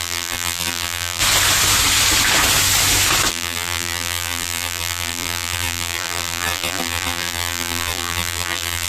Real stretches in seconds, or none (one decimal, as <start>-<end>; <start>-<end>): 1.2-3.3